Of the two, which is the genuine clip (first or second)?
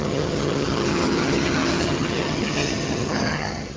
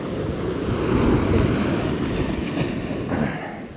second